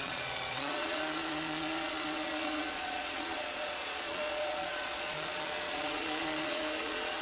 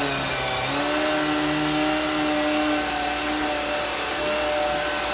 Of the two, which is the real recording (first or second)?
second